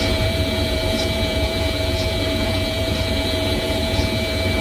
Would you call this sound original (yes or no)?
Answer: no